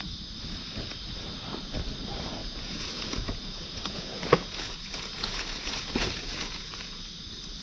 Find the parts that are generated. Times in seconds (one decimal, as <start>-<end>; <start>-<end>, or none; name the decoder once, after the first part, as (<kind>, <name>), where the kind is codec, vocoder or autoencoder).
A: 2.4-7.0 (vocoder, Vocos)